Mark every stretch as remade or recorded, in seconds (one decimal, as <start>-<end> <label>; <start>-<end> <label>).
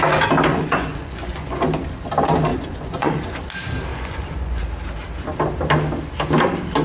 0.0-0.5 recorded; 0.5-1.6 remade; 1.6-2.5 recorded; 2.5-3.4 remade; 3.4-3.9 recorded; 3.9-4.6 remade; 4.6-6.8 recorded